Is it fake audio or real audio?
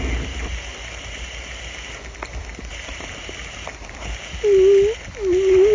real